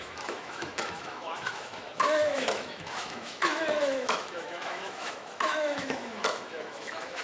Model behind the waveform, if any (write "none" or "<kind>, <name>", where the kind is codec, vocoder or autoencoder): autoencoder, DAC-VAE